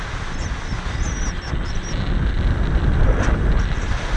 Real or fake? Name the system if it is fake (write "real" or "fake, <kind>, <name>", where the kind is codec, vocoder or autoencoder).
real